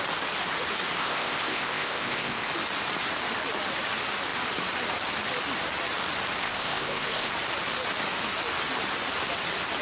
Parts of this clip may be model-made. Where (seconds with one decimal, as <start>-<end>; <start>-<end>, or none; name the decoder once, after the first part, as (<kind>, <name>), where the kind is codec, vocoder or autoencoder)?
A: 1.0-2.5 (codec, ZipCodec); 6.4-7.3